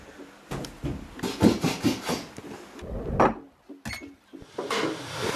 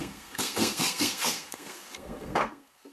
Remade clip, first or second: second